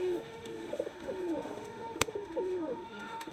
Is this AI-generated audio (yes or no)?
yes